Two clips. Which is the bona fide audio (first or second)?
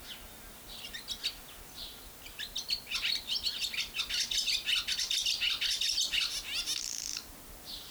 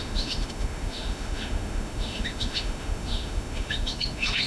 first